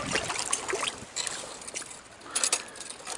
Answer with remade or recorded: recorded